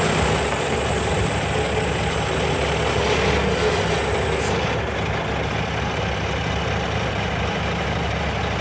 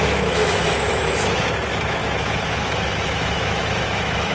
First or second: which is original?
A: first